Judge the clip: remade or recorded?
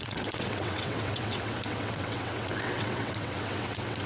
remade